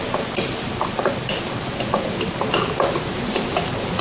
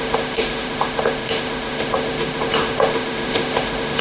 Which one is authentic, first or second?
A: first